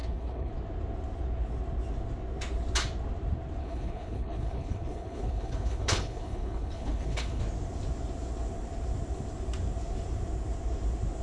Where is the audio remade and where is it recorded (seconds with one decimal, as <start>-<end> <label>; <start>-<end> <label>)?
0.0-0.5 remade; 0.5-3.6 recorded; 3.6-7.4 remade; 7.4-11.2 recorded